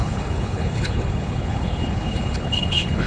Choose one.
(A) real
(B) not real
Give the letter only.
B